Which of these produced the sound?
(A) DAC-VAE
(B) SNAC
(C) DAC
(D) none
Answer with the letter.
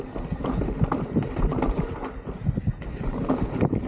D